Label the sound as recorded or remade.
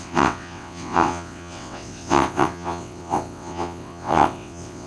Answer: remade